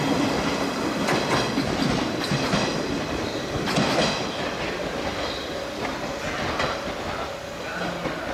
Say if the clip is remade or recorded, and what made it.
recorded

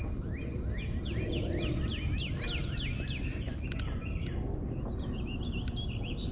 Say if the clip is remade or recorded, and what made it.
recorded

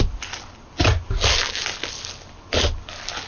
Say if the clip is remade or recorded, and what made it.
recorded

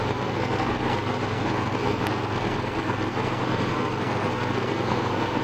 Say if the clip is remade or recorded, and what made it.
remade, codec, SNAC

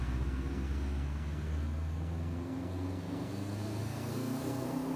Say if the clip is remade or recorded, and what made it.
remade, codec, SNAC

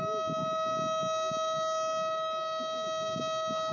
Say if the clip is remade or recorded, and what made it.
recorded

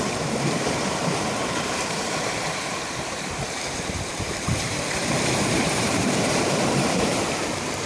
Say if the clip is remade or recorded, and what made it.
remade, vocoder, BigVGAN v2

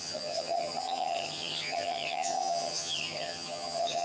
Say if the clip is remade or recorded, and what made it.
remade, vocoder, HiFi-GAN